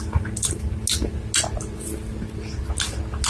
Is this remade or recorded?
recorded